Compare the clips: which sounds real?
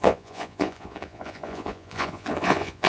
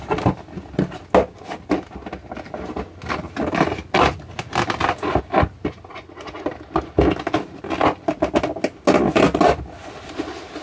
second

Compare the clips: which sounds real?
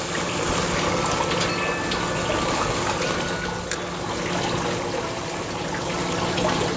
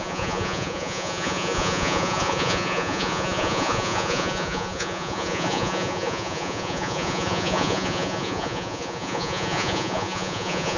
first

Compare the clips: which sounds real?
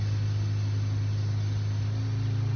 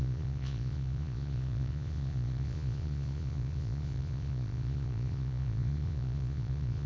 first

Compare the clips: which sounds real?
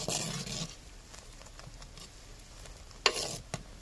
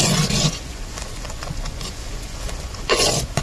first